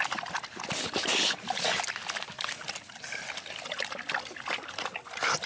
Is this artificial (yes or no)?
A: no